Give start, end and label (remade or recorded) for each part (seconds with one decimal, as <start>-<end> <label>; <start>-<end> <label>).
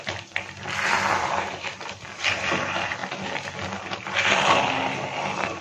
0.0-3.0 remade; 3.0-3.9 recorded; 3.9-5.6 remade